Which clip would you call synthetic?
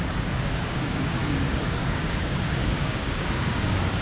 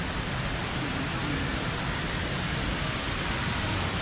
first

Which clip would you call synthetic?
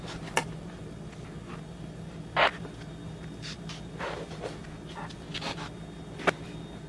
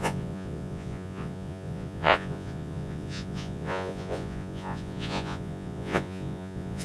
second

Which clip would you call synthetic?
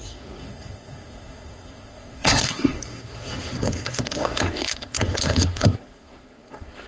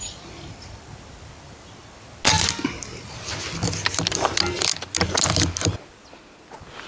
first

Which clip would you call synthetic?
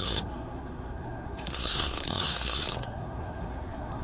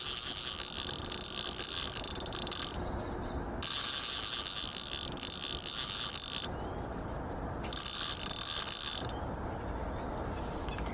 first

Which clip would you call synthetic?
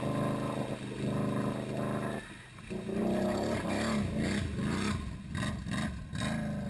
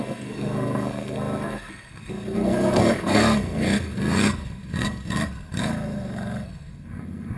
second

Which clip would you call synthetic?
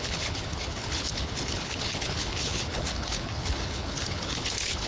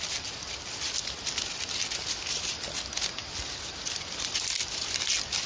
first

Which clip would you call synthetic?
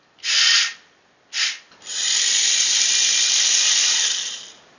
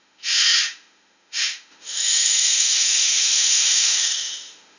second